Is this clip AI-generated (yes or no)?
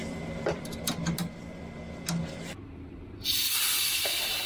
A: no